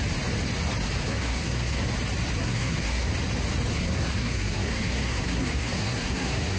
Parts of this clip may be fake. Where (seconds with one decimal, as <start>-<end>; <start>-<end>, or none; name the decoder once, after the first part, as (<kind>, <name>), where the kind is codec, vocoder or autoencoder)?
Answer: 1.0-1.8 (codec, SNAC); 2.4-3.1; 3.7-6.6